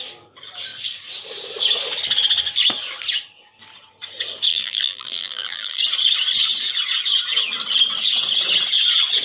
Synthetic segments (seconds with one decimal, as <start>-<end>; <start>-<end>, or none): 4.5-5.8